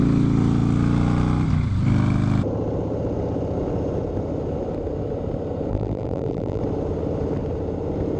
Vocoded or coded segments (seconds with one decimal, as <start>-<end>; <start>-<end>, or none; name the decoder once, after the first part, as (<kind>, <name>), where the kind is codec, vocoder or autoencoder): 5.7-6.6 (vocoder, BigVGAN v2)